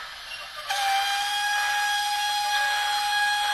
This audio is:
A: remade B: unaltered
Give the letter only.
B